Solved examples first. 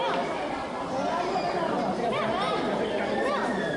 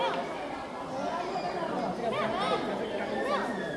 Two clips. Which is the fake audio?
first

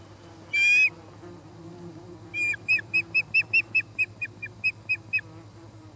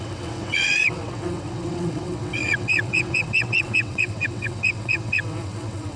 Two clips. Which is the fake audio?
second